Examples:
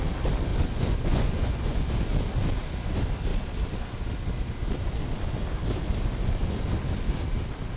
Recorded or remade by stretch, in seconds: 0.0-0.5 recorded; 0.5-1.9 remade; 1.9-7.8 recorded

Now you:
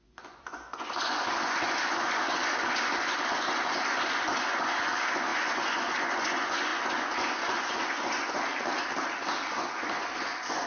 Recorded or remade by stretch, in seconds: 0.0-8.5 remade; 8.5-9.5 recorded; 9.5-10.7 remade

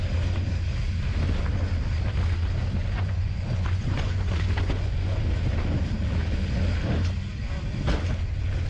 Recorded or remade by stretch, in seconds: 0.0-2.8 recorded; 2.8-5.2 remade; 5.2-8.7 recorded

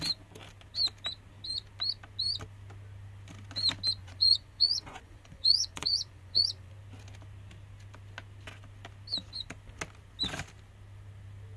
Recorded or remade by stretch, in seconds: 0.0-4.0 recorded; 4.0-6.7 remade; 6.7-11.6 recorded